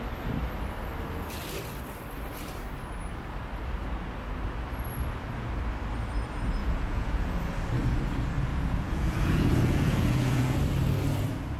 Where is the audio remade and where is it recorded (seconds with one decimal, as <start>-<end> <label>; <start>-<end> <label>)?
0.0-6.6 recorded; 6.6-7.4 remade; 7.4-8.5 recorded; 8.5-10.6 remade; 10.6-11.6 recorded